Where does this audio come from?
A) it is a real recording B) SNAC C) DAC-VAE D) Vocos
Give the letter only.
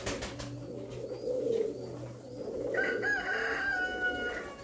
A